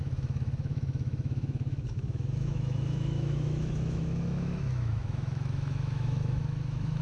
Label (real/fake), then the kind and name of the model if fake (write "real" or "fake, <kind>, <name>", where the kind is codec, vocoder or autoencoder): fake, autoencoder, DAC-VAE